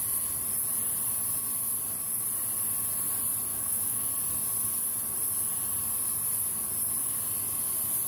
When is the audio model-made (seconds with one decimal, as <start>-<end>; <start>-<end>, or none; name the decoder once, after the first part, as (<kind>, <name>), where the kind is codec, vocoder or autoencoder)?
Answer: 3.5-4.1 (autoencoder, DAC-VAE)